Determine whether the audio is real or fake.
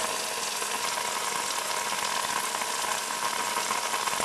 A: real